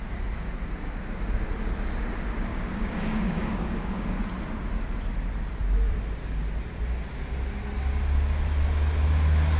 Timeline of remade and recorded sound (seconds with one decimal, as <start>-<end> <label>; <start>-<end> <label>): 0.0-2.5 recorded; 2.5-4.2 remade; 4.2-9.6 recorded